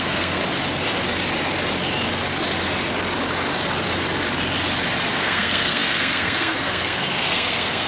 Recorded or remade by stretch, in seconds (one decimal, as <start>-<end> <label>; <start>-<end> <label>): 0.0-0.4 remade; 0.4-5.1 recorded; 5.1-7.9 remade